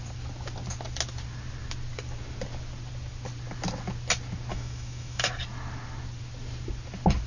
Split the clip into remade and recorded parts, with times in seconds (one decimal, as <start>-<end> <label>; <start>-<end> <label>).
0.0-4.5 recorded; 4.5-5.3 remade; 5.3-7.3 recorded